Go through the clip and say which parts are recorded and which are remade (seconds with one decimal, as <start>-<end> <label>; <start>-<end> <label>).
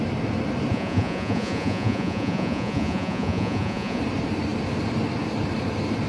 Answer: 0.0-0.7 recorded; 0.7-4.0 remade; 4.0-6.1 recorded